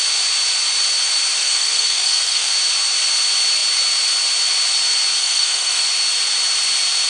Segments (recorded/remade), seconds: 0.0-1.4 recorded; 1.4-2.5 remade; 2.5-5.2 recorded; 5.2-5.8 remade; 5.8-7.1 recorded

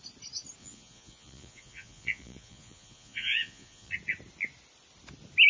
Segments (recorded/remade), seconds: 0.0-0.6 recorded; 0.6-3.9 remade; 3.9-5.5 recorded